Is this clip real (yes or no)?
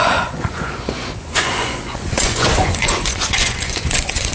no